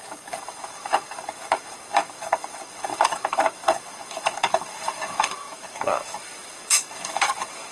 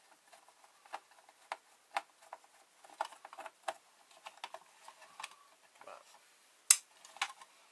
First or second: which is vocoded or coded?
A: first